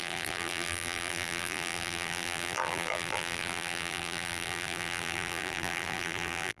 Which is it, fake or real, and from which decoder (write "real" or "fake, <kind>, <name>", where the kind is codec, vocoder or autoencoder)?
fake, vocoder, BigVGAN v2